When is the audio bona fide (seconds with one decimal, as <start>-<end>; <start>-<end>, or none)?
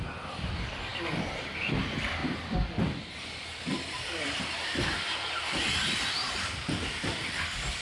0.9-1.8; 2.2-3.2; 5.6-7.1